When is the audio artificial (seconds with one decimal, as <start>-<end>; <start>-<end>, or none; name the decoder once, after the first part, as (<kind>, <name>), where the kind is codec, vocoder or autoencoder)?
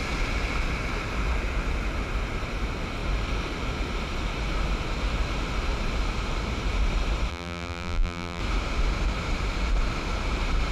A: 7.3-8.4 (vocoder, BigVGAN v2)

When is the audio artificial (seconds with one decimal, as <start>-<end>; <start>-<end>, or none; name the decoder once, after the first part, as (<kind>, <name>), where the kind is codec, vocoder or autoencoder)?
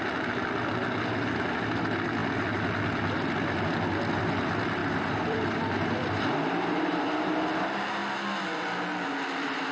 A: 4.8-7.4 (vocoder, BigVGAN v2)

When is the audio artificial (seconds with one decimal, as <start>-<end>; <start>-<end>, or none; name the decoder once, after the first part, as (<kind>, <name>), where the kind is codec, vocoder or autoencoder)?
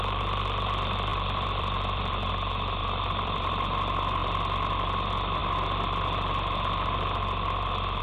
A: 1.1-2.3 (vocoder, BigVGAN v2); 2.8-3.5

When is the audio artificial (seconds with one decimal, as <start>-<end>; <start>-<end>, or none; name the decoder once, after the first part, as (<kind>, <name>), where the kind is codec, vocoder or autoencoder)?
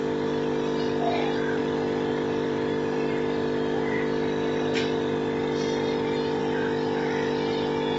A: 1.6-6.4 (vocoder, BigVGAN v2)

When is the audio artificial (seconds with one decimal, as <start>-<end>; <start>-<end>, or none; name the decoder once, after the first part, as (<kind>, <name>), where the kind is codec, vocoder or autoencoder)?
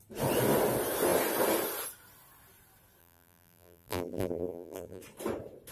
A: 3.0-5.0 (vocoder, BigVGAN v2)